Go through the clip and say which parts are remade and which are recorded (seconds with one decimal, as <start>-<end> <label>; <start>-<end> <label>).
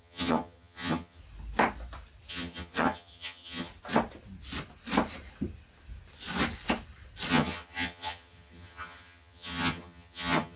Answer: 0.0-1.2 remade; 1.2-2.3 recorded; 2.3-3.7 remade; 3.7-7.3 recorded; 7.3-10.6 remade